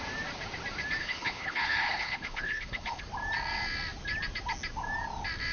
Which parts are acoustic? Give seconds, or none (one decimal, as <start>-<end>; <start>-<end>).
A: 0.0-1.0; 3.0-5.5